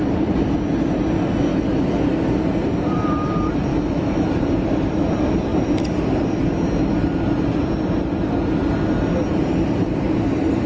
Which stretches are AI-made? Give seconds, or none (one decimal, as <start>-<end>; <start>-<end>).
1.5-2.2; 3.7-4.4